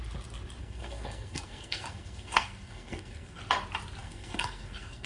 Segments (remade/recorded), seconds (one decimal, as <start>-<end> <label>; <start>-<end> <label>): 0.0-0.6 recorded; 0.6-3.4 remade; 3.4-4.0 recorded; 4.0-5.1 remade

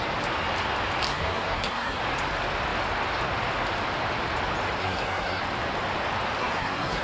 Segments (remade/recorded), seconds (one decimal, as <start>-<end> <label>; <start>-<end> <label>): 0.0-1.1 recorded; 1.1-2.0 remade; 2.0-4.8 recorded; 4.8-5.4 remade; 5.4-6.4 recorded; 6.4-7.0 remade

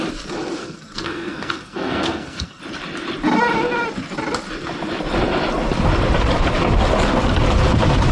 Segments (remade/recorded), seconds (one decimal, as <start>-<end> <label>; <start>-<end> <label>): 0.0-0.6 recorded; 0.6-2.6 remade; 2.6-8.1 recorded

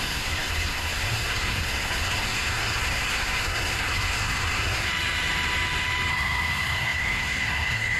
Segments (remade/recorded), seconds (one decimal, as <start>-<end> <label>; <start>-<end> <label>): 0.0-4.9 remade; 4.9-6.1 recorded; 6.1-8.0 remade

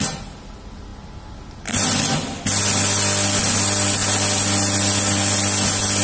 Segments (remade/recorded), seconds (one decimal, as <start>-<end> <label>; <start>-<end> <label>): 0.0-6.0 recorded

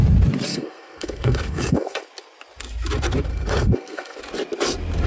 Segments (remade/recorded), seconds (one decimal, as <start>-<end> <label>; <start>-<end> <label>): 0.0-0.5 recorded; 0.5-2.0 remade; 2.0-3.3 recorded; 3.3-4.2 remade; 4.2-5.1 recorded

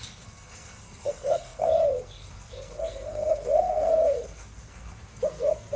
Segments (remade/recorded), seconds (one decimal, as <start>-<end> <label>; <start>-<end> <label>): 0.0-5.8 remade

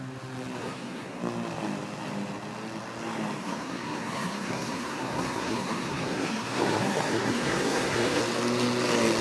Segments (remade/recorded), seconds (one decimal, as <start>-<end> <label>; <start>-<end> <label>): 0.0-0.6 recorded; 0.6-1.2 remade; 1.2-3.4 recorded; 3.4-8.2 remade; 8.2-9.2 recorded